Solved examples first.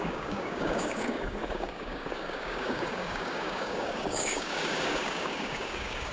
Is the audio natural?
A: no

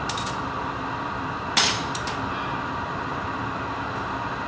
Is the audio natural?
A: yes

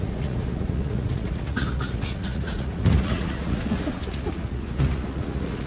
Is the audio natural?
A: no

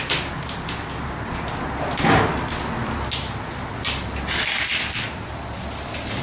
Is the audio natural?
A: yes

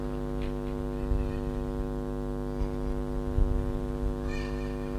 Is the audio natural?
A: yes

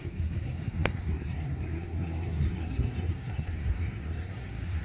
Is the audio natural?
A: no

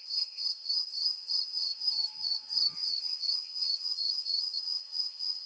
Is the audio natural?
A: no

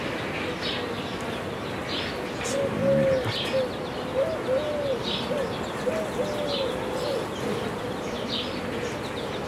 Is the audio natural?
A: yes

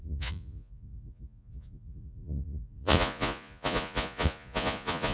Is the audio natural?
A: no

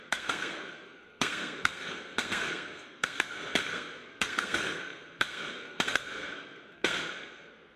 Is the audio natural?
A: no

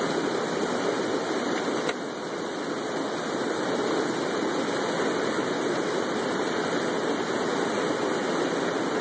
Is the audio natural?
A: yes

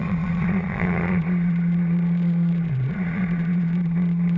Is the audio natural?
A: no